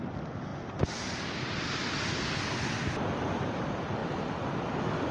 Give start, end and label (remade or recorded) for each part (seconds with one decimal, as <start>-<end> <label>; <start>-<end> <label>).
0.0-4.0 remade; 4.0-5.1 recorded